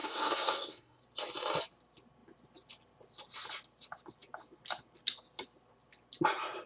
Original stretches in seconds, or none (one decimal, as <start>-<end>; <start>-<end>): 1.0-6.7